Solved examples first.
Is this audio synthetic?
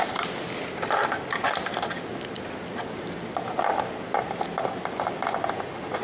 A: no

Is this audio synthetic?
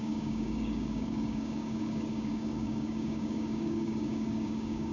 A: yes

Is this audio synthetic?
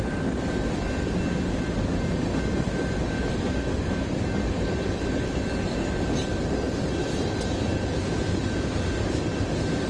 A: no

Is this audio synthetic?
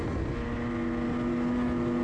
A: no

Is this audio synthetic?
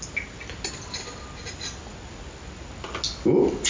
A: no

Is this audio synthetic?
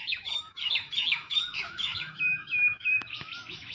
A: yes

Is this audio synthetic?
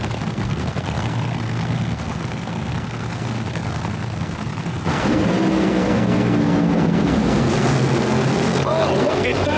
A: yes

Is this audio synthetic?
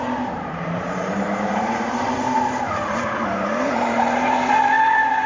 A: yes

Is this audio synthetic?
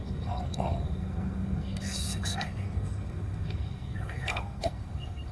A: yes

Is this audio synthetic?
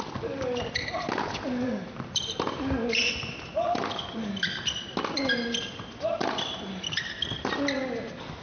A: no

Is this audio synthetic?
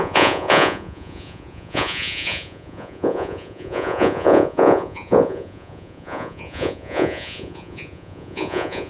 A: yes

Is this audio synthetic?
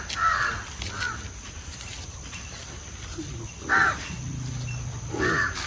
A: no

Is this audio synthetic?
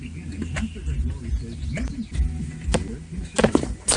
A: no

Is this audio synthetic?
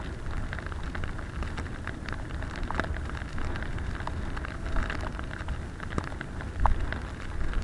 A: no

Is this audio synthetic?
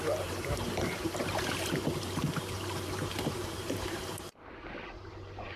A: yes